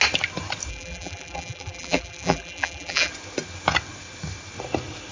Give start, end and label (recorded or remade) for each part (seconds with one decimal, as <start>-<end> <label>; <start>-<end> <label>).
0.0-0.7 recorded; 0.7-3.1 remade; 3.1-5.1 recorded